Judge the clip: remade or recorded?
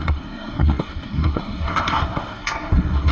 remade